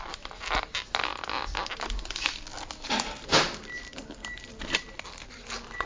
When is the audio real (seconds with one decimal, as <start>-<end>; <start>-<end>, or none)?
0.0-5.9